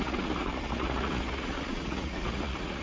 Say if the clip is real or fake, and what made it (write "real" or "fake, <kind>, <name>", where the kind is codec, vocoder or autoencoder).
fake, vocoder, Vocos